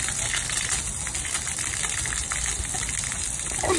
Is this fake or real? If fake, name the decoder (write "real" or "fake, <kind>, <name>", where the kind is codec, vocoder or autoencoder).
real